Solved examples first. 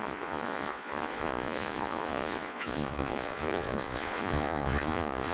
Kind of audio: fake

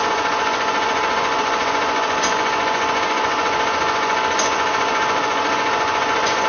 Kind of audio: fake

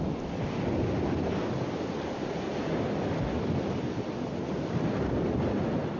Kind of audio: real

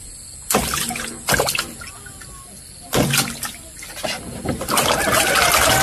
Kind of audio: real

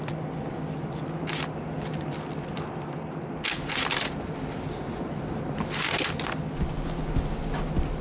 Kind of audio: real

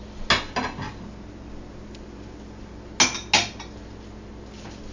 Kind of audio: real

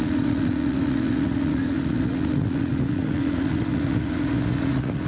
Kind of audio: fake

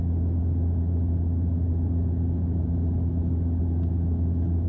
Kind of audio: real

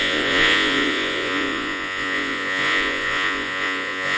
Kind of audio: fake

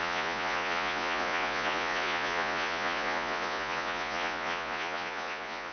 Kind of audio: fake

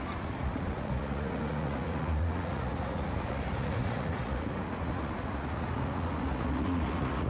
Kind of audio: fake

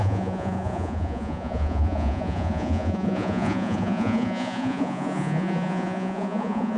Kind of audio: fake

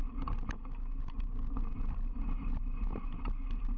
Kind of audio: real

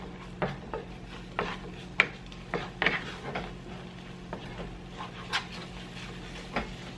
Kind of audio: real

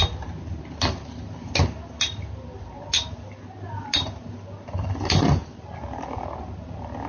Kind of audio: real